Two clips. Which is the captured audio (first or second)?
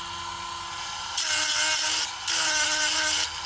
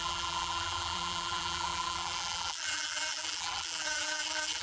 first